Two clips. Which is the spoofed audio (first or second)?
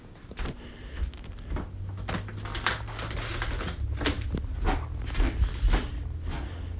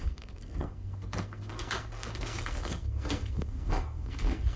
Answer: second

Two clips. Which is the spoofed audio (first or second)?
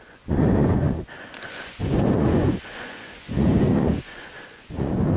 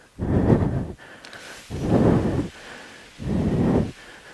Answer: first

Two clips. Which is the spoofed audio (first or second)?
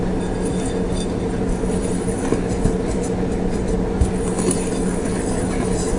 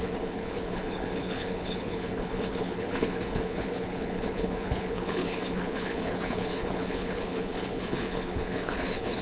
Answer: second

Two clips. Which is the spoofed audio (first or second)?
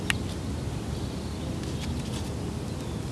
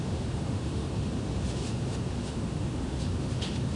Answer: second